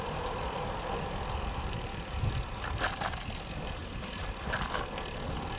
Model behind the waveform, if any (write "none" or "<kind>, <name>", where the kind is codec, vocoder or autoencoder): none